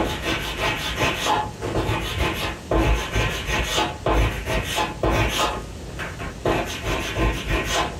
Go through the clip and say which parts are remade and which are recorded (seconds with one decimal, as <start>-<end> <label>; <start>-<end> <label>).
0.0-3.7 remade; 3.7-6.4 recorded; 6.4-8.0 remade